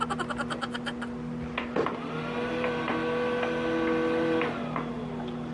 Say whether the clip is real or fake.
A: real